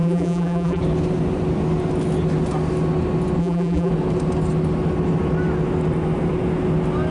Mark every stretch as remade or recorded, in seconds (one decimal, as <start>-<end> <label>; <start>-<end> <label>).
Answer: 0.0-0.8 remade; 0.8-3.4 recorded; 3.4-3.9 remade; 3.9-7.1 recorded